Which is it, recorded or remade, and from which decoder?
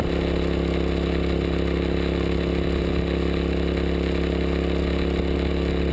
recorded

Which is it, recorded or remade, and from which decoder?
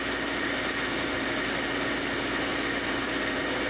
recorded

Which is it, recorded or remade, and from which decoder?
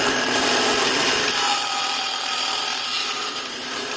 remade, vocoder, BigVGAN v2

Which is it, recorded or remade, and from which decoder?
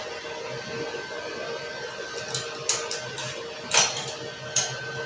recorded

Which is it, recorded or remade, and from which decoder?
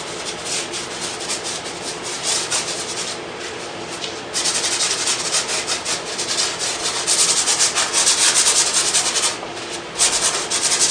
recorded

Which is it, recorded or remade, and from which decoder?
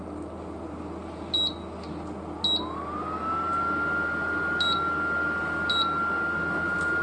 recorded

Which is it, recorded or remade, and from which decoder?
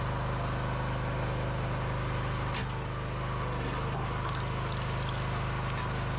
recorded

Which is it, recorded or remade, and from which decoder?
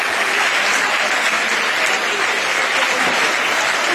recorded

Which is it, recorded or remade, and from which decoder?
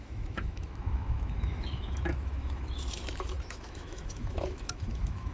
remade, autoencoder, DAC-VAE